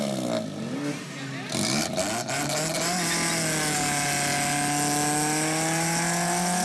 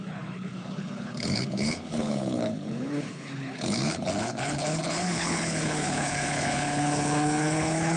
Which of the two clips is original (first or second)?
first